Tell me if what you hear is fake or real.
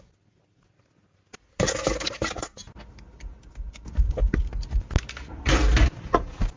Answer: real